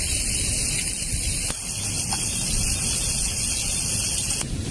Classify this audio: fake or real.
real